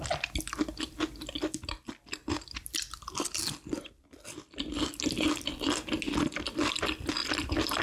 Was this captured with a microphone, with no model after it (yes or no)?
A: yes